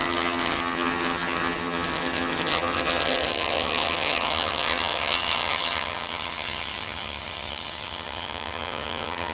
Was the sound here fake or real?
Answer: fake